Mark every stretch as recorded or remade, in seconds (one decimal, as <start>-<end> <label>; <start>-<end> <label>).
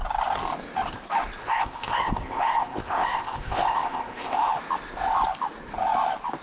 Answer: 0.0-1.4 recorded; 1.4-4.5 remade; 4.5-6.4 recorded